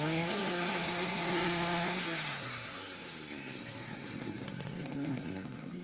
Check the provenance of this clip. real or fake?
fake